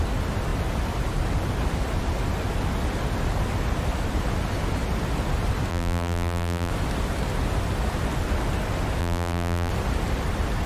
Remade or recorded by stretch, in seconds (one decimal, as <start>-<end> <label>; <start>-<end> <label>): 0.0-5.7 recorded; 5.7-6.7 remade; 6.7-9.0 recorded; 9.0-9.7 remade; 9.7-10.7 recorded